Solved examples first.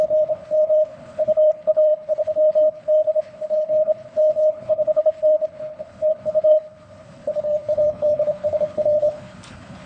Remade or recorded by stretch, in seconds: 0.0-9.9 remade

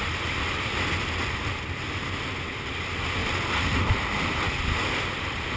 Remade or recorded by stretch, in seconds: 0.0-5.6 recorded

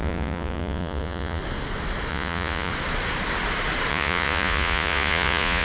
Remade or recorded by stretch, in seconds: 0.0-1.4 remade; 1.4-2.1 recorded; 2.1-2.7 remade; 2.7-3.9 recorded; 3.9-5.6 remade

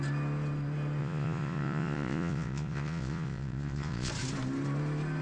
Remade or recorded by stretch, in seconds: 0.0-1.0 recorded; 1.0-4.1 remade; 4.1-5.2 recorded

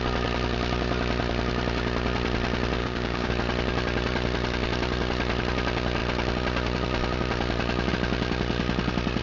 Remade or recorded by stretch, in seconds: 0.0-2.8 recorded; 2.8-3.3 remade; 3.3-9.2 recorded

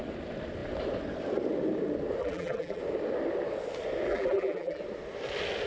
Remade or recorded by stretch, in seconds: 0.0-2.2 recorded; 2.2-2.8 remade; 2.8-4.1 recorded; 4.1-4.8 remade; 4.8-5.7 recorded

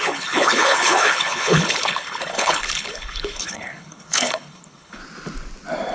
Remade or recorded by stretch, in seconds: 0.0-5.0 remade; 5.0-5.9 recorded

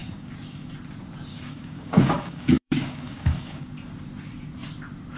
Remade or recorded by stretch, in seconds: 0.0-0.7 remade; 0.7-1.3 recorded; 1.3-3.7 remade; 3.7-5.2 recorded